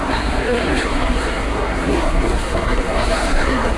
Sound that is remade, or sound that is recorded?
remade